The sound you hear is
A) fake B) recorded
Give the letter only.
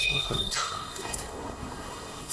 A